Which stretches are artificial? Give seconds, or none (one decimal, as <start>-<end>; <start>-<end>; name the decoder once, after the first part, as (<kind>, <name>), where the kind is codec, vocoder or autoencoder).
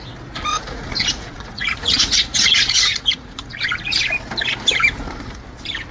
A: 0.5-4.0 (vocoder, Vocos)